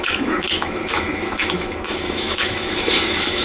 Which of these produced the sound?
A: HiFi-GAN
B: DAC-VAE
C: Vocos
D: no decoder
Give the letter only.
B